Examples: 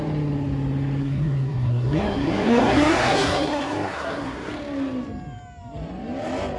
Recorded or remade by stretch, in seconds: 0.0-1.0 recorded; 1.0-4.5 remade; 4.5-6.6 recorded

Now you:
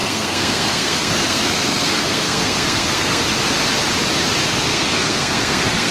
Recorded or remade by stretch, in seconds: 0.0-3.2 remade; 3.2-4.7 recorded; 4.7-5.9 remade

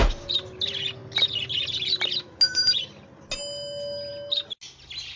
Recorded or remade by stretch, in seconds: 0.0-5.2 recorded

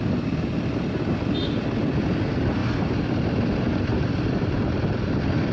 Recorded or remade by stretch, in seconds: 0.0-5.5 recorded

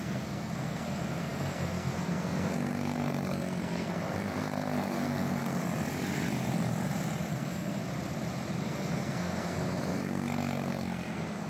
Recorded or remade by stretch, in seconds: 0.0-5.6 remade; 5.6-7.3 recorded; 7.3-7.8 remade; 7.8-8.6 recorded; 8.6-11.5 remade

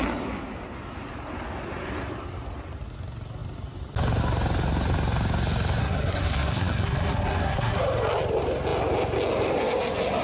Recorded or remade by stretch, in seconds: 0.0-5.8 recorded; 5.8-7.8 remade; 7.8-10.2 recorded

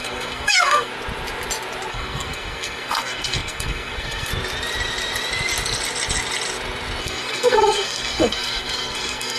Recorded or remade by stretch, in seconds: 0.0-0.9 remade; 0.9-1.9 recorded; 1.9-4.3 remade; 4.3-7.0 recorded; 7.0-9.4 remade

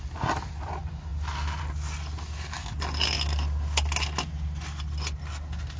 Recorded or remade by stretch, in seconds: 0.0-5.8 recorded